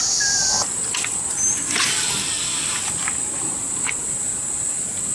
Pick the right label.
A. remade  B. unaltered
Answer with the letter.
B